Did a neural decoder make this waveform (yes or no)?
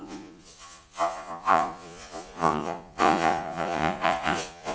yes